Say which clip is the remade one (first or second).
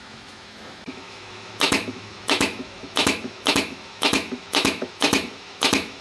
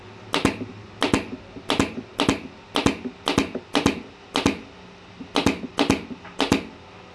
first